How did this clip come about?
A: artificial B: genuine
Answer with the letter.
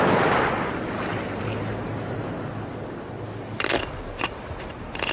B